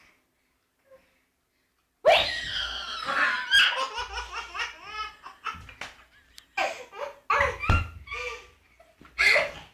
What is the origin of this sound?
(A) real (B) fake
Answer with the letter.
A